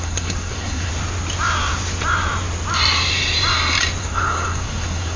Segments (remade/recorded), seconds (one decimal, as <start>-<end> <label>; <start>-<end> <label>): 0.0-0.9 remade; 0.9-4.0 recorded; 4.0-5.2 remade